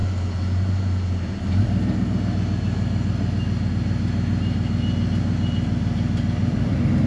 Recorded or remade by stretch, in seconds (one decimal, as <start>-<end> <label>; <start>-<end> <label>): 0.0-7.1 recorded